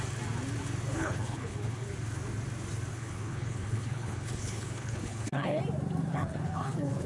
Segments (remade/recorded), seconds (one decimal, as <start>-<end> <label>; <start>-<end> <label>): 0.0-0.9 recorded; 0.9-1.9 remade; 1.9-2.9 recorded; 2.9-5.6 remade; 5.6-6.1 recorded; 6.1-7.1 remade